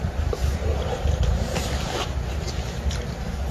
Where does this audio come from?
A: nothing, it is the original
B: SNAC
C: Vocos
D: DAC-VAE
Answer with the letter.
A